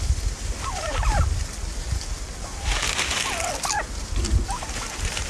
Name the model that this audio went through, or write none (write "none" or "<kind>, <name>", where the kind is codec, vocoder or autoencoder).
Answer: none